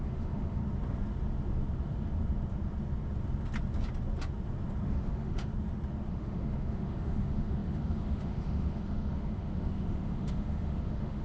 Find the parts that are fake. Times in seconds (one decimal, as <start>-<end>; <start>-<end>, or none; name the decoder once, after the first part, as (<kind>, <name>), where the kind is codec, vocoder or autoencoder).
0.0-0.6 (autoencoder, DAC-VAE); 4.9-5.5; 6.1-11.2